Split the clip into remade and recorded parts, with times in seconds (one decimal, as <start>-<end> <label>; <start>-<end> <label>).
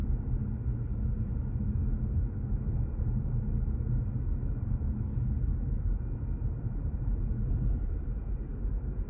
0.0-9.1 recorded